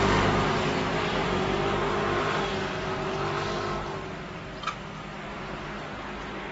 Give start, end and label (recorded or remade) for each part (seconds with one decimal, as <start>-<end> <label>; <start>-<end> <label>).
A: 0.0-6.5 recorded